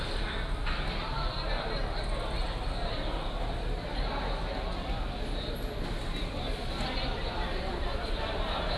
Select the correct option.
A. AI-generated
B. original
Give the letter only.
B